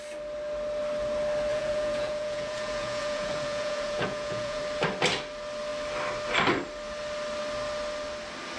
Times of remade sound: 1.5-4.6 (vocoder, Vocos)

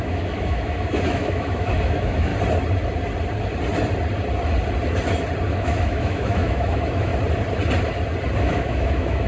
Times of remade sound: 0.0-2.3 (autoencoder, DAC-VAE); 5.5-7.1; 8.4-9.3

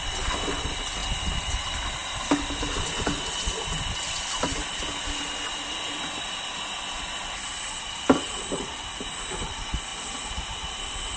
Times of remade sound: 0.0-2.0 (vocoder, BigVGAN v2); 3.9-4.6; 8.2-9.9

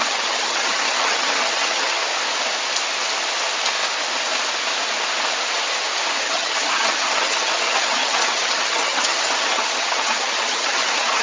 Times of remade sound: 0.0-2.0 (vocoder, HiFi-GAN); 6.2-11.2